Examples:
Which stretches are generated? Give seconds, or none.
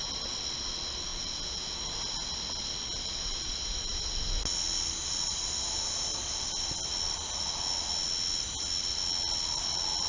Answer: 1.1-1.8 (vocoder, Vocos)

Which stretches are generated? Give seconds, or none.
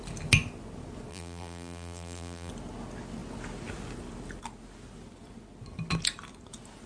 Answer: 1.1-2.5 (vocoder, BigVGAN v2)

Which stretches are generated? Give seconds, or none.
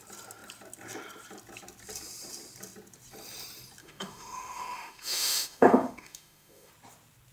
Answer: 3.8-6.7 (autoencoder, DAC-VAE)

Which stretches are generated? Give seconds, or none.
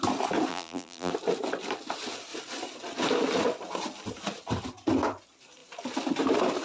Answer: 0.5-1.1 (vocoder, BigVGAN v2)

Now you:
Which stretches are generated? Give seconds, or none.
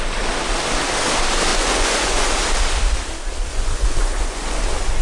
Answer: 1.5-2.3 (vocoder, Vocos); 3.5-4.6